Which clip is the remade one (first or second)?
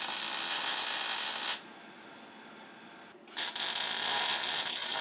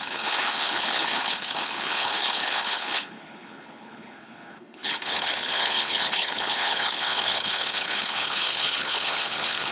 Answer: second